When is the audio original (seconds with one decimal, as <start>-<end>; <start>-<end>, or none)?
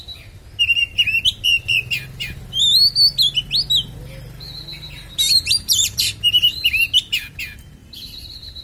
0.0-4.7; 6.0-7.8